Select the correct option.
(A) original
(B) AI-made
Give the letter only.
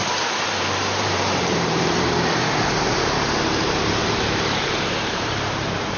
B